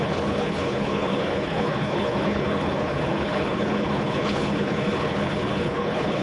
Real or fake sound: fake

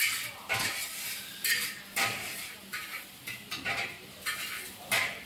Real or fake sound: real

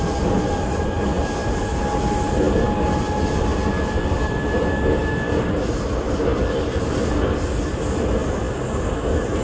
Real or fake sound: real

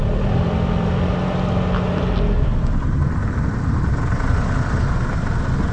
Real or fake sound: real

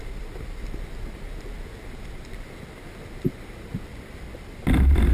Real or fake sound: real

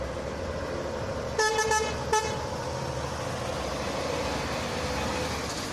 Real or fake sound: real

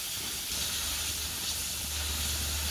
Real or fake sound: real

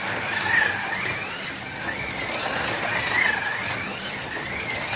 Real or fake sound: real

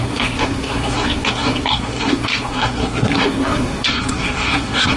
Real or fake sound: fake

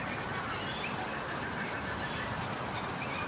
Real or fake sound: real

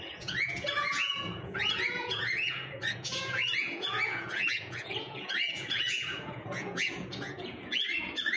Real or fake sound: fake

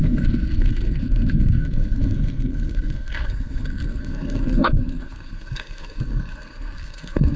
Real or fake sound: fake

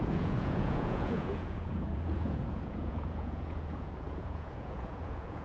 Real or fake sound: fake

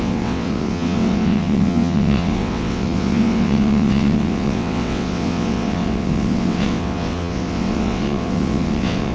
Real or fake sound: fake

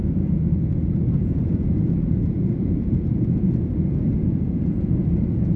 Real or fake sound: fake